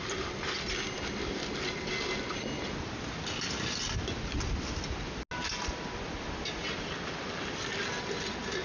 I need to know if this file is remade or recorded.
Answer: recorded